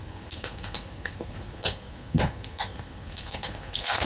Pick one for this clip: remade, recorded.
remade